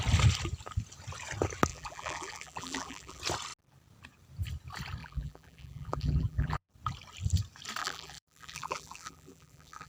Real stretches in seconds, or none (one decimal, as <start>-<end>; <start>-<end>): 0.0-1.7; 3.2-5.0; 6.7-7.8